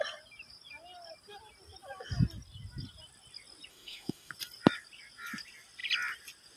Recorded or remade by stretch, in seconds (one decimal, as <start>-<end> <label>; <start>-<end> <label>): 0.0-3.7 recorded; 3.7-4.3 remade; 4.3-6.6 recorded

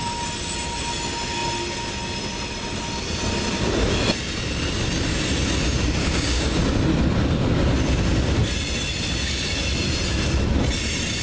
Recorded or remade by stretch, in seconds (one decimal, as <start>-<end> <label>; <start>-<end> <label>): 0.0-6.0 recorded; 6.0-6.6 remade; 6.6-11.2 recorded

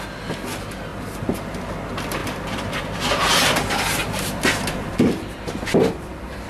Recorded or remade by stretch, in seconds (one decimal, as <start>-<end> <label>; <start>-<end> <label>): 0.0-2.2 recorded; 2.2-2.8 remade; 2.8-6.5 recorded

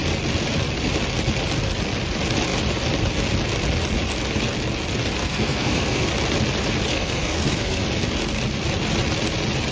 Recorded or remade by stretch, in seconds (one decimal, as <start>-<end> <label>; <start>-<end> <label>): 0.0-5.2 recorded; 5.2-6.1 remade; 6.1-6.9 recorded; 6.9-7.8 remade; 7.8-9.7 recorded

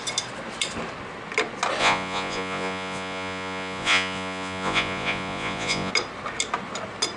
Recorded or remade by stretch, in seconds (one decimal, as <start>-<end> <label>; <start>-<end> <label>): 0.0-1.8 recorded; 1.8-5.9 remade; 5.9-7.2 recorded

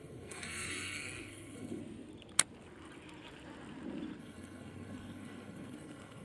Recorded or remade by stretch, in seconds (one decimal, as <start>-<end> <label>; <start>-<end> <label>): 0.0-1.8 remade; 1.8-4.2 recorded; 4.2-6.2 remade